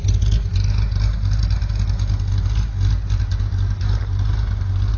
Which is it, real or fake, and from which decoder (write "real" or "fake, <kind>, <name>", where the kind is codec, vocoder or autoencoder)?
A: real